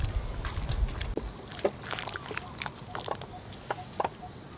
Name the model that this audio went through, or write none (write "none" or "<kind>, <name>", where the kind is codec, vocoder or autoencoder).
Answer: none